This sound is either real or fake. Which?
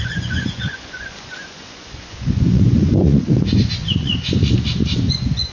fake